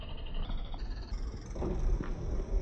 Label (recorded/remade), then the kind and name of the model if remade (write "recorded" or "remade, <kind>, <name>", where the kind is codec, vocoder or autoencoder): recorded